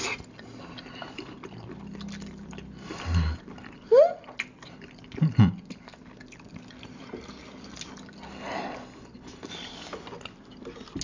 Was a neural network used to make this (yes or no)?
no